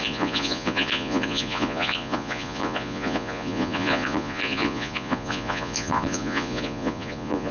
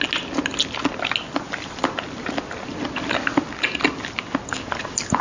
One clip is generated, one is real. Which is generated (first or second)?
first